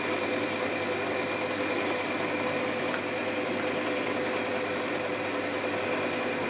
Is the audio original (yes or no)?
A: yes